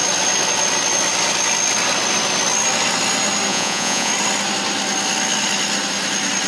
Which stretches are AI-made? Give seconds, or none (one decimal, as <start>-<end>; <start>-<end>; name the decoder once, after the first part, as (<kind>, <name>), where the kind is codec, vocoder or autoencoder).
3.5-4.1 (vocoder, Vocos)